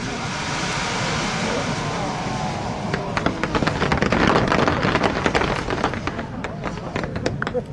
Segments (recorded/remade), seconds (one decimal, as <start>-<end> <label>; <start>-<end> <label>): 0.0-7.7 recorded

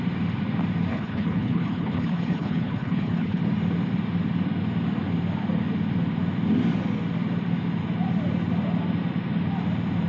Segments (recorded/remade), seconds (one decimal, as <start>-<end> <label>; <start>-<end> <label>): 0.0-0.9 recorded; 0.9-3.4 remade; 3.4-10.1 recorded